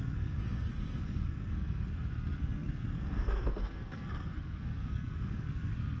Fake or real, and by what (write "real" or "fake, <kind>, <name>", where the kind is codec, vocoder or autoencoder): fake, codec, SNAC